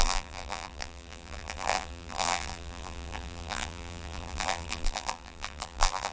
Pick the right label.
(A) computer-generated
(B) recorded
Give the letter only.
A